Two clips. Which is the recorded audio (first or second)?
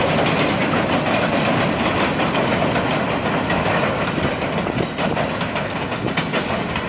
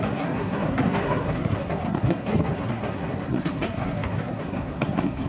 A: first